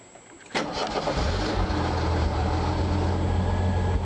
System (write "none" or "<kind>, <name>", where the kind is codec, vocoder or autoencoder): none